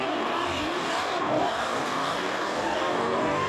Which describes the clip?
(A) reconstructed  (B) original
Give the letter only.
A